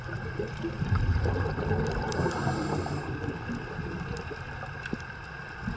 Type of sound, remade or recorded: recorded